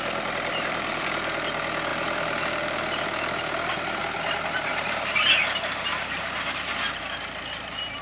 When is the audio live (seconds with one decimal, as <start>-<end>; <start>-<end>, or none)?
0.0-0.5; 1.1-4.7; 5.2-5.9; 7.0-8.0